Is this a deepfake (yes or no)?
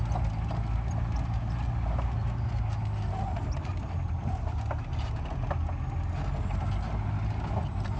no